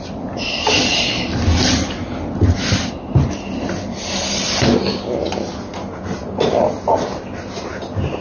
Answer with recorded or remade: recorded